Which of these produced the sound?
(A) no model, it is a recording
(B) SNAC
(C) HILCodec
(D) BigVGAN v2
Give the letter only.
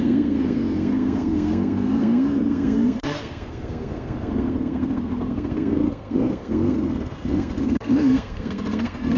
B